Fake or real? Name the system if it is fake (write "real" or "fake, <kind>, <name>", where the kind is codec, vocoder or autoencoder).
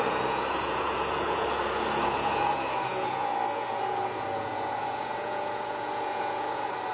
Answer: fake, vocoder, Vocos